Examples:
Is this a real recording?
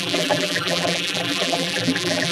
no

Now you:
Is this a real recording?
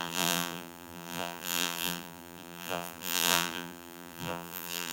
no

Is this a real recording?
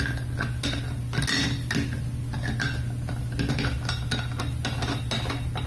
yes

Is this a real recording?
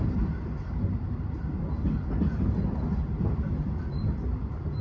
yes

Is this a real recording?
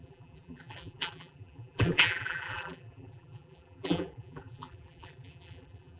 no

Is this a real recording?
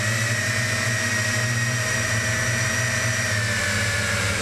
no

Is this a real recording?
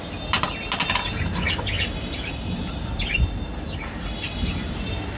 yes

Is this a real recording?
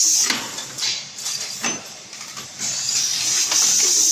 yes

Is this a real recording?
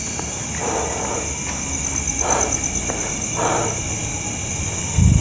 yes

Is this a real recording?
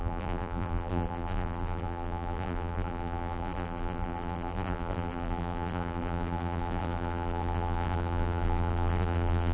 no